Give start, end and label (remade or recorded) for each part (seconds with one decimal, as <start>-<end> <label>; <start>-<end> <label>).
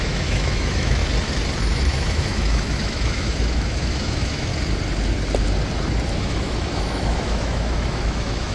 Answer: 0.0-1.0 remade; 1.0-1.6 recorded; 1.6-4.5 remade; 4.5-6.2 recorded; 6.2-8.5 remade